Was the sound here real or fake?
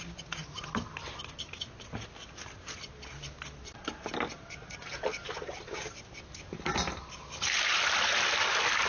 real